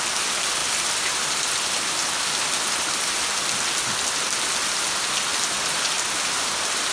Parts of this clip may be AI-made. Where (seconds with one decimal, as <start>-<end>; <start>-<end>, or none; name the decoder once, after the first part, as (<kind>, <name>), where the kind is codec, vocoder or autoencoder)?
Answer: 0.6-3.2 (vocoder, BigVGAN v2); 5.3-5.9